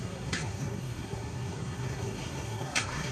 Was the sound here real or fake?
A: fake